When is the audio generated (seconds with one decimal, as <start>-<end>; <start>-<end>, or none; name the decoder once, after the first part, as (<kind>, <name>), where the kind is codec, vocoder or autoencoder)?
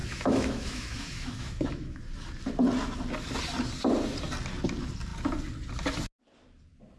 0.0-2.0 (autoencoder, DAC-VAE)